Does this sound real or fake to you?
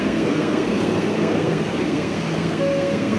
fake